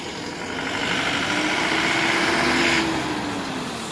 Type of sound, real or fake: real